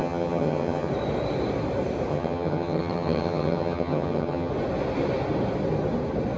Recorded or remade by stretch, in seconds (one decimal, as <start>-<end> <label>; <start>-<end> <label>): 0.0-0.9 remade; 0.9-2.1 recorded; 2.1-4.5 remade; 4.5-6.4 recorded